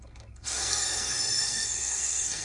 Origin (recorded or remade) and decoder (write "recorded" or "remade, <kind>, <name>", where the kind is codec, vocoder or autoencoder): remade, codec, SNAC